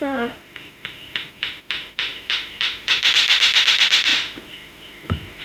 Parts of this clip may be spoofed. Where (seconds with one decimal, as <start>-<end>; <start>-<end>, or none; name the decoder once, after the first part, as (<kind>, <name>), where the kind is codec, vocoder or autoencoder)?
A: 0.0-5.4 (autoencoder, DAC-VAE)